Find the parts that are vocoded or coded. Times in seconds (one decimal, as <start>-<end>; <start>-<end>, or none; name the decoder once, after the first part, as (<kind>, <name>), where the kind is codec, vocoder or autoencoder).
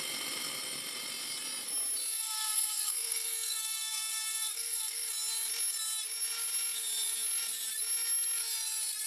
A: 2.1-5.1 (codec, SNAC)